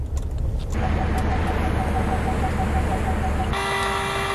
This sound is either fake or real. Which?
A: real